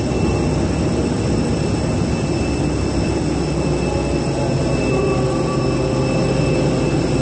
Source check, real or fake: real